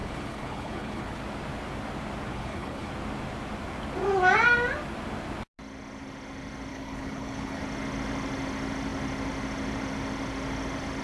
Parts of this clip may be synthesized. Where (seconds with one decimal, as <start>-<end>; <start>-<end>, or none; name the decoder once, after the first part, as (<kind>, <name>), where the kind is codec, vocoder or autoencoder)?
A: 0.0-1.2 (codec, HILCodec); 2.3-2.9; 6.7-7.6